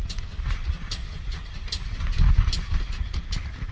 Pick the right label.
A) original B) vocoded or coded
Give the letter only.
A